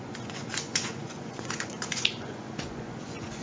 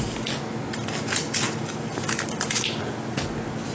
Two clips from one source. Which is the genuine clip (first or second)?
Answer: second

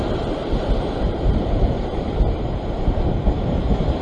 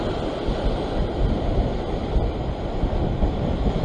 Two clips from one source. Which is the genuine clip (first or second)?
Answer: second